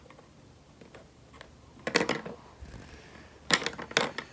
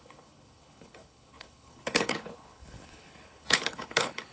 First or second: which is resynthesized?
second